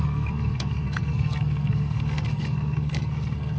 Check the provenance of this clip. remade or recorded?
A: remade